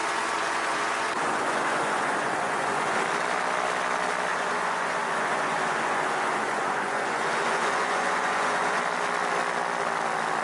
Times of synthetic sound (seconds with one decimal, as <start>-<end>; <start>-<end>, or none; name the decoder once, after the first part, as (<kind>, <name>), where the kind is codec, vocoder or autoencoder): 0.0-3.0 (vocoder, Vocos); 4.3-8.8